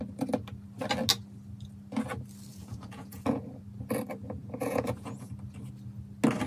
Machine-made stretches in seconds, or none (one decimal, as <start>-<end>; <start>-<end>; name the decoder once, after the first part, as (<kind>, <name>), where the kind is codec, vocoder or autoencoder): 2.5-3.6 (vocoder, Vocos); 4.4-5.3